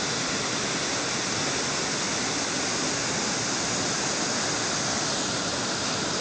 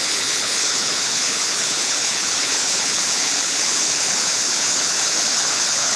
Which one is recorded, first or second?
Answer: first